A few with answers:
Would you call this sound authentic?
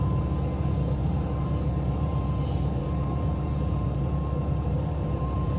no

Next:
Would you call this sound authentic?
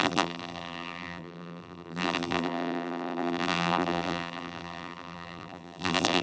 no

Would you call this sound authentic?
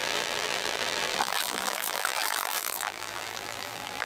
no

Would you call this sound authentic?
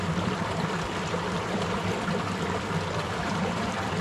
no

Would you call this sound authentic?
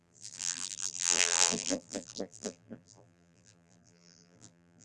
no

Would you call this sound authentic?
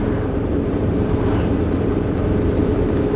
no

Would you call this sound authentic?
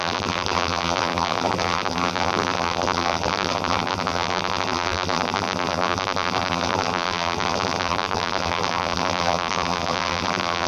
no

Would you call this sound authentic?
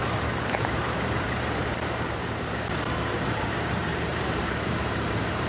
no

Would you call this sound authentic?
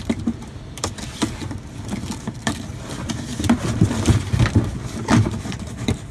no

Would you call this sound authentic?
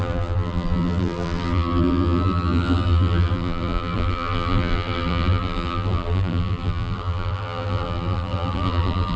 no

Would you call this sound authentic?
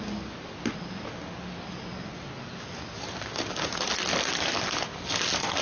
yes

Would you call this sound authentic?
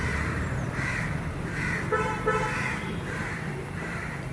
no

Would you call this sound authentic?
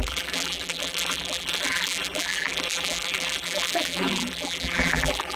no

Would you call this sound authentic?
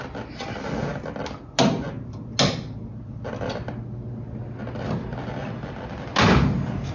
yes